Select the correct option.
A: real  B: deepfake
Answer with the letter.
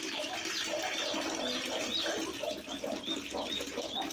A